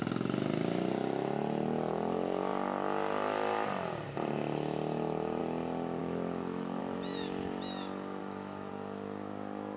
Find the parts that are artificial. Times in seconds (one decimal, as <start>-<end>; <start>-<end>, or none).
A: 6.0-6.8; 8.2-8.7